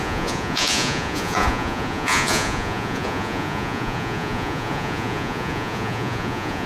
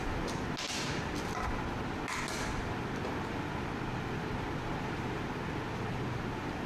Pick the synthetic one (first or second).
first